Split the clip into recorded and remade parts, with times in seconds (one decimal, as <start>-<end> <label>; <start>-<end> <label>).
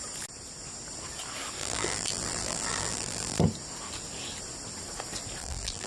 0.0-1.6 recorded; 1.6-3.4 remade; 3.4-5.4 recorded; 5.4-5.9 remade